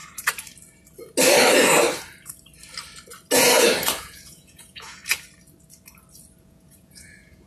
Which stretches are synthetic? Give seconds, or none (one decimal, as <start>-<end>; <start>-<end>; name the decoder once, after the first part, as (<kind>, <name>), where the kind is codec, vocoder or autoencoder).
4.0-5.0 (vocoder, Vocos); 6.4-7.5